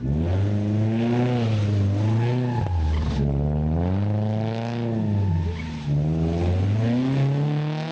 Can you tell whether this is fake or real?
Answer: real